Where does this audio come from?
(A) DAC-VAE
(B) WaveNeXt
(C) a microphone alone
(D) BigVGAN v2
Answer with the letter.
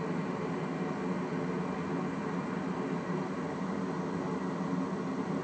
C